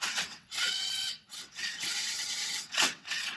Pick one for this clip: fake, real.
fake